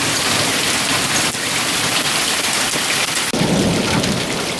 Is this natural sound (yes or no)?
yes